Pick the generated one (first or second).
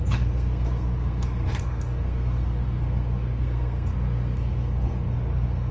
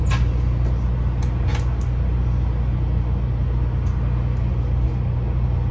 first